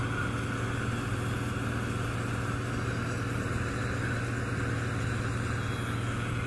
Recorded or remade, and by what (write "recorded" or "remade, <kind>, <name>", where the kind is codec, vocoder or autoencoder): recorded